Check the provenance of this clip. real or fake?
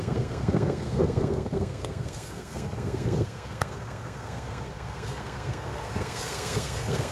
fake